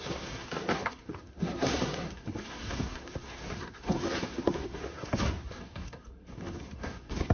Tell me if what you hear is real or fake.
fake